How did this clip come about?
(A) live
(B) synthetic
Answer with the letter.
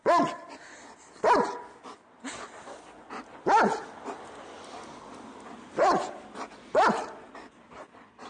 A